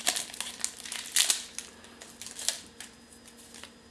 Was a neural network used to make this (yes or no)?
no